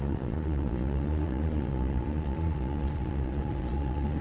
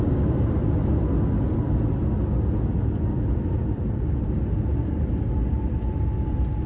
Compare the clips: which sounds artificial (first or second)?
first